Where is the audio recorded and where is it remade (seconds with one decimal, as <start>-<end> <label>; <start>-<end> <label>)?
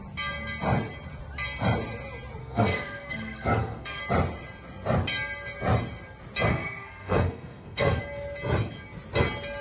0.0-2.4 recorded; 2.4-4.0 remade; 4.0-6.5 recorded; 6.5-8.0 remade; 8.0-9.6 recorded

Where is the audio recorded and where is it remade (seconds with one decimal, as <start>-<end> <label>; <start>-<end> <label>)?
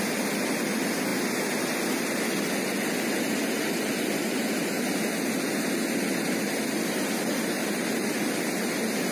0.0-9.1 recorded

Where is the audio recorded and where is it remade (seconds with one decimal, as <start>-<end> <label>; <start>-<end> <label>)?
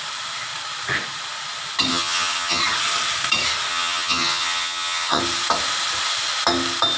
0.0-1.9 recorded; 1.9-2.6 remade; 2.6-3.7 recorded; 3.7-5.2 remade; 5.2-7.0 recorded